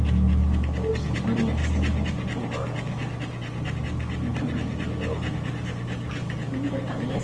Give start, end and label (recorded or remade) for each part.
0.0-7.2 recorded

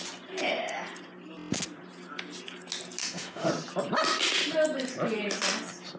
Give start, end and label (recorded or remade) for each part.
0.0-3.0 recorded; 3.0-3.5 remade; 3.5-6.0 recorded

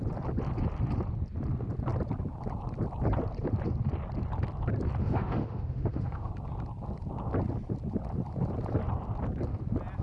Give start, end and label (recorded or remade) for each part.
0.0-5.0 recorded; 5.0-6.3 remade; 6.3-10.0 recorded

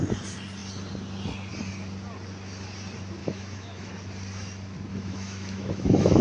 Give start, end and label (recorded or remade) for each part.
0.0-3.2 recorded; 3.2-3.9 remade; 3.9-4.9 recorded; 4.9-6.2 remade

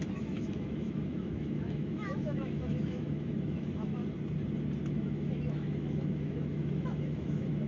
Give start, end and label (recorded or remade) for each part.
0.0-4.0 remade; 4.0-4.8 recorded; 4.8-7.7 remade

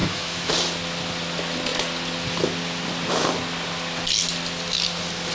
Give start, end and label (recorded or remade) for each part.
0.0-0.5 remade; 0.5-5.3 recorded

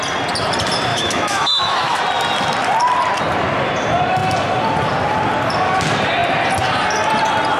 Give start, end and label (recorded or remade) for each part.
0.0-0.9 recorded; 0.9-2.0 remade; 2.0-7.6 recorded

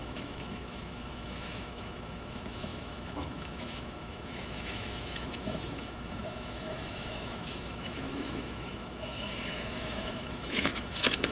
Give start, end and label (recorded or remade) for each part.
0.0-11.3 remade